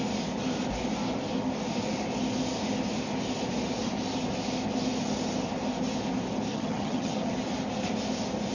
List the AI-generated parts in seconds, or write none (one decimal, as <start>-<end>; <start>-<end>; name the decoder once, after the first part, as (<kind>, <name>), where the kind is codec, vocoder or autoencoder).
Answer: 6.5-7.3 (vocoder, HiFi-GAN)

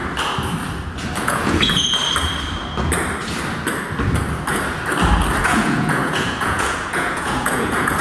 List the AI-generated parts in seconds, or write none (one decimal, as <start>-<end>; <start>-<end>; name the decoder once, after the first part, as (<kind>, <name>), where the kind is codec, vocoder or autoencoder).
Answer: 1.2-2.0 (vocoder, Vocos); 5.4-8.0

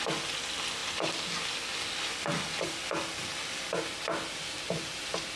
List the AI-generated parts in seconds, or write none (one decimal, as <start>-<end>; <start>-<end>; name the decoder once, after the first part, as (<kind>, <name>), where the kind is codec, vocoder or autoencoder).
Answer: none